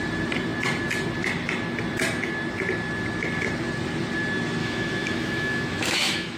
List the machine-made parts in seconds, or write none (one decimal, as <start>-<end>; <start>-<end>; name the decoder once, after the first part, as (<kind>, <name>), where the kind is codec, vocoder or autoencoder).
4.6-6.4 (autoencoder, DAC-VAE)